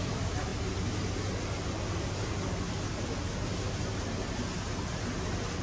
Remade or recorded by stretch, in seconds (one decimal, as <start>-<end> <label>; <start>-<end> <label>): 0.0-5.6 recorded